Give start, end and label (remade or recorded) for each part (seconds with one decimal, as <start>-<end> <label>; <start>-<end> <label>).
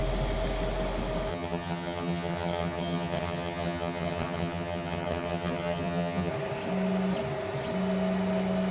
0.0-1.3 recorded; 1.3-6.3 remade; 6.3-8.7 recorded